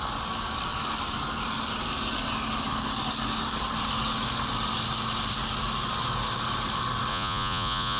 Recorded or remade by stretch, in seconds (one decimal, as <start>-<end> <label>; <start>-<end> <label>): 0.0-7.1 recorded; 7.1-8.0 remade

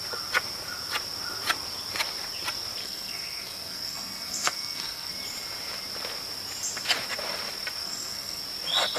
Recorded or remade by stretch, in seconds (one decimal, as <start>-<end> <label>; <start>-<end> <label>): 0.0-2.8 recorded; 2.8-5.1 remade; 5.1-7.8 recorded; 7.8-8.4 remade; 8.4-9.0 recorded

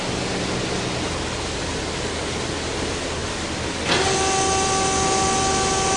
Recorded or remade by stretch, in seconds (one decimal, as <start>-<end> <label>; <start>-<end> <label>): 0.0-6.0 recorded

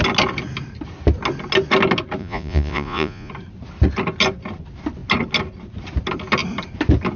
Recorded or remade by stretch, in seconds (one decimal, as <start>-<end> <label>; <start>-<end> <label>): 0.0-2.2 recorded; 2.2-3.3 remade; 3.3-7.2 recorded

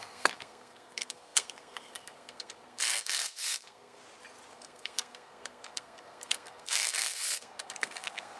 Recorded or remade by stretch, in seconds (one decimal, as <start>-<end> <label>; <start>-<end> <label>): 0.0-4.0 remade; 4.0-4.5 recorded; 4.5-8.4 remade

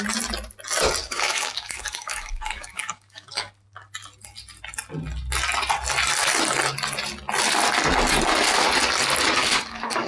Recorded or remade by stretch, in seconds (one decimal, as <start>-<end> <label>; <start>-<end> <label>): 0.0-1.0 recorded; 1.0-3.5 remade; 3.5-9.4 recorded; 9.4-10.1 remade

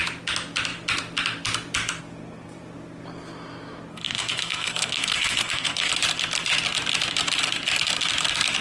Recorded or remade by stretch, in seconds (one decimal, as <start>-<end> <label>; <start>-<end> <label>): 0.0-3.9 recorded; 3.9-5.9 remade; 5.9-8.6 recorded

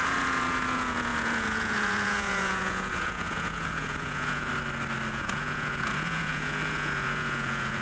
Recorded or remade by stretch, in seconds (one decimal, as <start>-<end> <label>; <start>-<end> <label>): 0.0-4.5 remade; 4.5-5.1 recorded; 5.1-7.8 remade